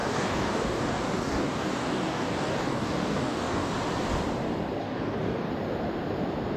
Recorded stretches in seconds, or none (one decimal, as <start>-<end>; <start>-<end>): 3.7-4.8; 5.5-6.6